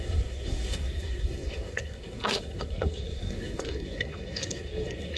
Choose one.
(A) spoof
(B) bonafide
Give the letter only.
A